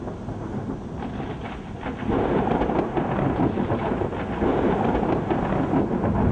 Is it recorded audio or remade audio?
recorded